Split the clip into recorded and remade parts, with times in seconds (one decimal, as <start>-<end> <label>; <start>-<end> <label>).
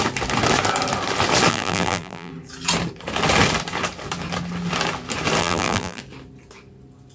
0.0-1.5 recorded; 1.5-2.3 remade; 2.3-5.4 recorded; 5.4-6.0 remade; 6.0-7.1 recorded